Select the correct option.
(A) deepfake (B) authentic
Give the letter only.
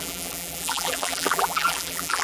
A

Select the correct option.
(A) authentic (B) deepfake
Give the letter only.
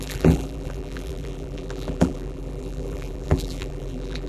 B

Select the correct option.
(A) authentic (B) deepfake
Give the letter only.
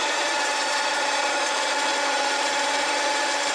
B